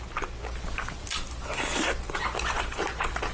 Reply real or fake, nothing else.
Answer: real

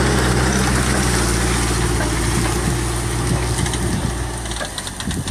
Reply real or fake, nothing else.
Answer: real